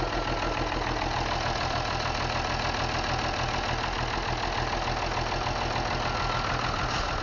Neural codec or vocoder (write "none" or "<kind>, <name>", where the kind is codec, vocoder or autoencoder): none